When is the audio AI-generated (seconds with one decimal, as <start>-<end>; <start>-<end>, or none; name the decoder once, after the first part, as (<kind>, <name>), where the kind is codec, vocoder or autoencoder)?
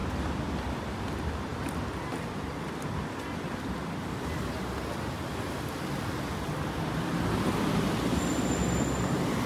none